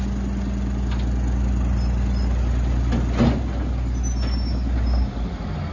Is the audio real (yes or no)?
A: yes